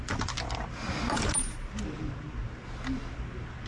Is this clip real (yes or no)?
yes